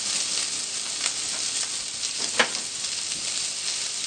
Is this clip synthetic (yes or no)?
no